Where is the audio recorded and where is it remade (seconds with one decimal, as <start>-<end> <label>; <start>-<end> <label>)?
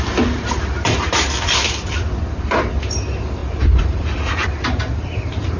0.0-3.4 recorded; 3.4-5.6 remade